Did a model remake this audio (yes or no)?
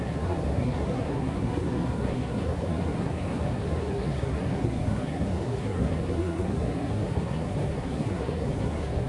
yes